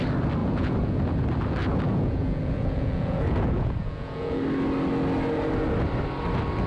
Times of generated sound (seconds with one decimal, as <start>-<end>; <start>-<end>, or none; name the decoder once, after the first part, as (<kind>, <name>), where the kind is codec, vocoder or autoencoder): 0.4-1.0 (vocoder, Vocos); 1.6-4.4